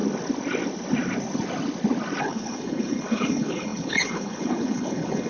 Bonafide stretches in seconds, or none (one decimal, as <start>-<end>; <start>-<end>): 0.0-2.2